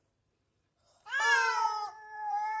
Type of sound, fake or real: fake